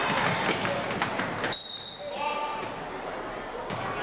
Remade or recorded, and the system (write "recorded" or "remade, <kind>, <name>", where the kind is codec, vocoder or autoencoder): recorded